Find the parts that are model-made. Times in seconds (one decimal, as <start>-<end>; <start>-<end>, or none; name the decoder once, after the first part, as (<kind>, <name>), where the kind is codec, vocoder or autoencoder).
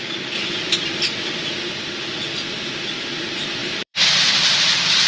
3.6-4.6 (vocoder, BigVGAN v2)